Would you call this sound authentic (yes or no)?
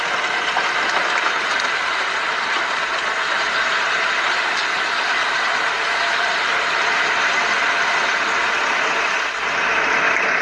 yes